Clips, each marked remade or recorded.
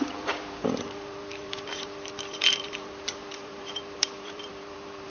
remade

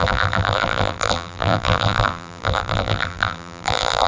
remade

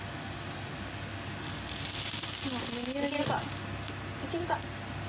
recorded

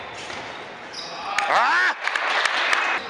recorded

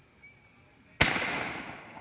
recorded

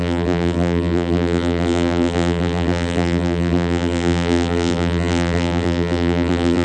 remade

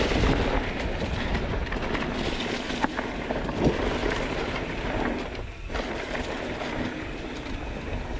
recorded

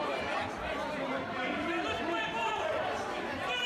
recorded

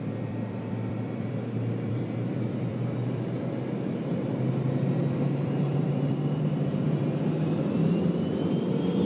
remade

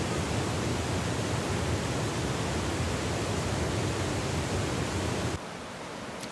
recorded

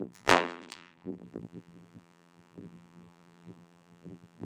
remade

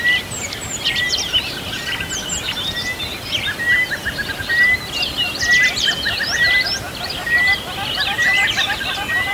recorded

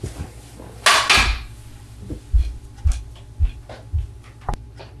recorded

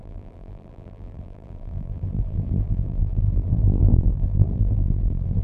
remade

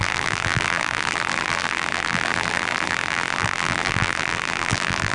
remade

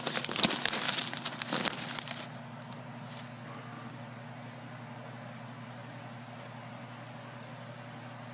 recorded